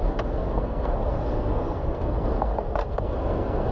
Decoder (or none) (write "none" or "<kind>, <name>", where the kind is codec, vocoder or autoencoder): codec, SNAC